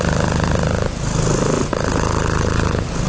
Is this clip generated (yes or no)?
no